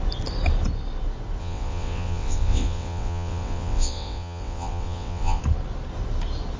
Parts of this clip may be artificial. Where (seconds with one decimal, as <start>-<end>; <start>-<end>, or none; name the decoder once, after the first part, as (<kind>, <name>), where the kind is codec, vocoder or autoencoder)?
1.4-5.4 (vocoder, WaveNeXt)